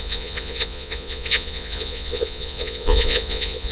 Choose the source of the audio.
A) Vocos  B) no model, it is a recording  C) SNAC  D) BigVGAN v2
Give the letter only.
A